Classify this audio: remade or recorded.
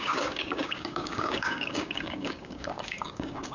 remade